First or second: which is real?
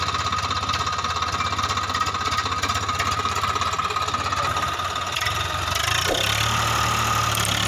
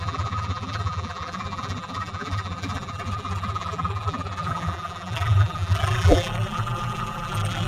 first